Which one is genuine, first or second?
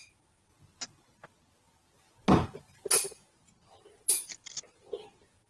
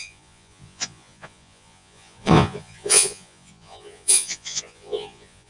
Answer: first